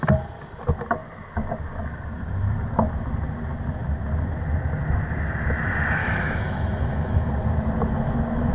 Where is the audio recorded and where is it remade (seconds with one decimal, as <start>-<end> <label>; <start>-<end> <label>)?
0.0-6.0 recorded; 6.0-7.3 remade; 7.3-8.5 recorded